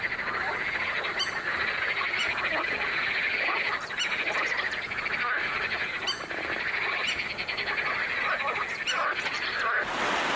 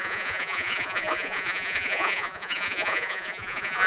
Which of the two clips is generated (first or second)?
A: second